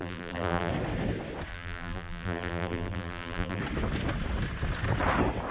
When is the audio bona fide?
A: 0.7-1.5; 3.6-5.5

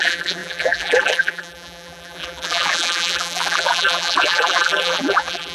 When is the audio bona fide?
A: none

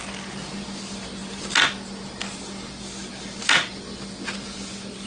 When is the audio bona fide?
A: 0.0-5.1

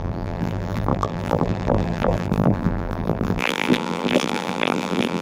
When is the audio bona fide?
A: none

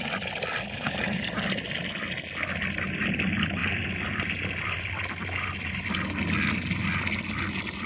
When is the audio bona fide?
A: 0.0-7.9

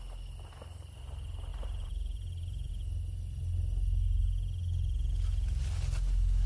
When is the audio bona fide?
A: 0.0-1.5; 2.7-6.5

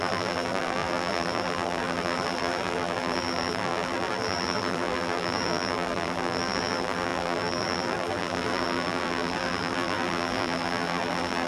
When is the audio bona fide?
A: none